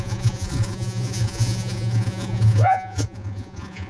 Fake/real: fake